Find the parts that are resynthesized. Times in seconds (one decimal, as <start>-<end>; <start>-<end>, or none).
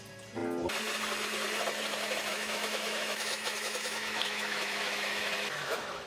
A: 2.3-6.1